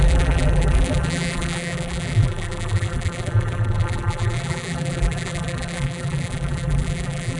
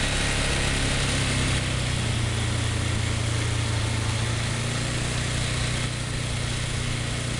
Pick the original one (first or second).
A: second